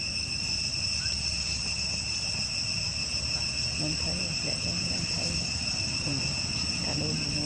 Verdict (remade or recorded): remade